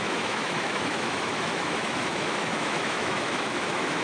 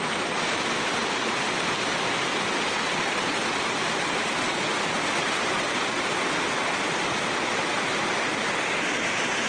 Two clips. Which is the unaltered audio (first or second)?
second